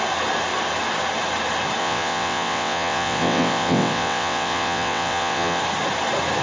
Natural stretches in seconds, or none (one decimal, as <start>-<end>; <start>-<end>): 0.0-1.8; 5.6-6.4